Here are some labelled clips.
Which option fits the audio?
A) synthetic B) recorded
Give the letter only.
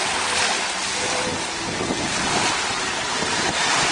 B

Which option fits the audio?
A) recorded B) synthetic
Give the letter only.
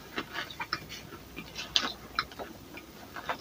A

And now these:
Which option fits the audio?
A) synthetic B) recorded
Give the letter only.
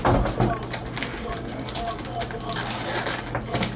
B